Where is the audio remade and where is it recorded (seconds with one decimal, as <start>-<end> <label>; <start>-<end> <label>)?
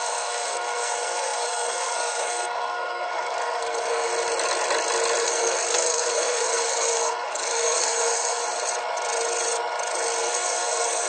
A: 0.0-4.1 remade; 4.1-5.2 recorded; 5.2-8.4 remade; 8.4-10.2 recorded; 10.2-11.1 remade